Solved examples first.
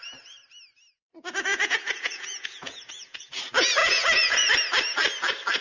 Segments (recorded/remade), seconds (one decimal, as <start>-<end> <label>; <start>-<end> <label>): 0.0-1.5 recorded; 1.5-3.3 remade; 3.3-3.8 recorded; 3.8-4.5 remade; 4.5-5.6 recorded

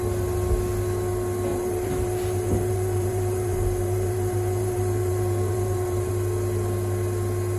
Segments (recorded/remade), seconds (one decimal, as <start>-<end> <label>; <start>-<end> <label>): 0.0-1.5 recorded; 1.5-6.1 remade; 6.1-7.6 recorded

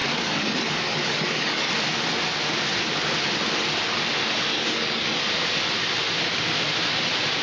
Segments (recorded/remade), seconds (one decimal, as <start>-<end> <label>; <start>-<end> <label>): 0.0-1.7 remade; 1.7-4.5 recorded; 4.5-5.2 remade; 5.2-7.4 recorded